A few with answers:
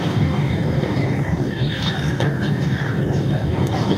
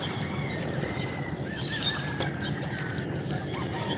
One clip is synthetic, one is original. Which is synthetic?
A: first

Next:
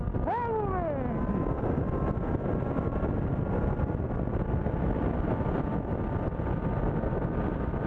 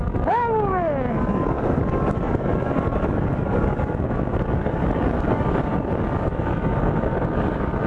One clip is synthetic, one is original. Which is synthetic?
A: second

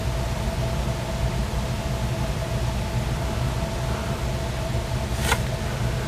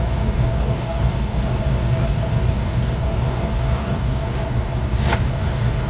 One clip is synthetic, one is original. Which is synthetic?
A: second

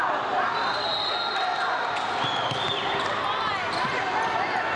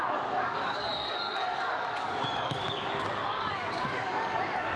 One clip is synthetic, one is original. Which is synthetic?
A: second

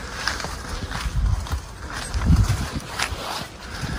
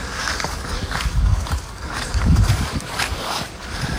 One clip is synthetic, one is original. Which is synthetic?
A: second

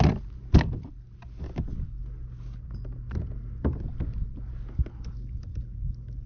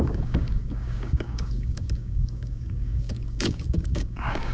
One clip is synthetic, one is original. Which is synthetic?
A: second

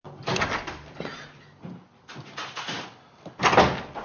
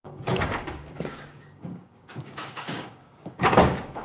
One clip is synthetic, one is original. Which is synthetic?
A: second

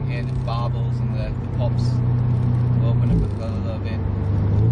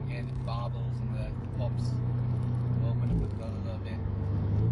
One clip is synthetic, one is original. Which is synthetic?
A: second